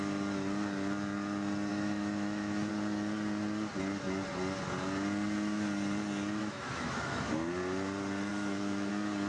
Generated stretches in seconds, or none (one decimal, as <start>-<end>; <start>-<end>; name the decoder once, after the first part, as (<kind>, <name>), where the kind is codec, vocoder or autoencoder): 1.7-2.7 (autoencoder, DAC-VAE); 6.4-7.3; 8.3-8.9